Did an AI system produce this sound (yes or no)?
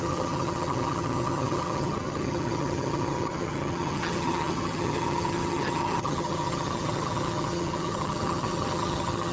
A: yes